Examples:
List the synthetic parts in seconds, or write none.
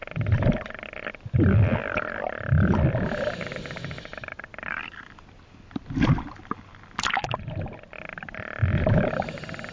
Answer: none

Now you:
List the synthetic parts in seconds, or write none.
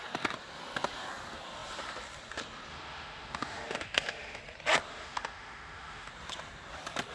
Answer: 2.7-4.4 (autoencoder, DAC-VAE); 4.9-6.1